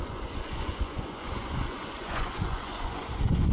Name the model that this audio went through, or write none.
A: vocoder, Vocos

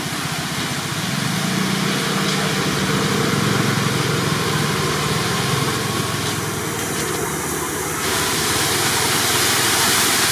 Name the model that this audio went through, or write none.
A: none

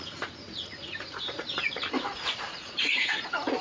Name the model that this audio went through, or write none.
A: vocoder, Vocos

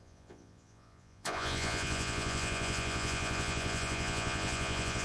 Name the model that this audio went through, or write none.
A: vocoder, Vocos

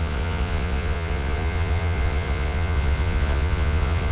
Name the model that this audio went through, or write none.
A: vocoder, Vocos